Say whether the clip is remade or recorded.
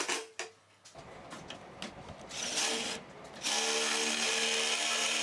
recorded